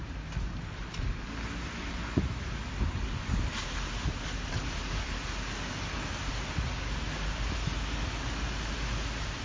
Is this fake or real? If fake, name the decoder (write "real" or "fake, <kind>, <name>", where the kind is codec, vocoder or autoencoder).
real